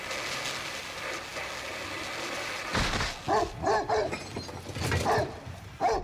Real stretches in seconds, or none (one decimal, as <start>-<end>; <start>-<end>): 0.0-6.0